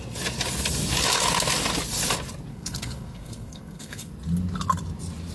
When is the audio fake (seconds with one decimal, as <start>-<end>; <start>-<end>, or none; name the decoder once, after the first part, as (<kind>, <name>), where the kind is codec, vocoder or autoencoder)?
2.5-4.1 (codec, SNAC)